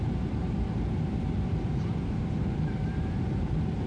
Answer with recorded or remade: remade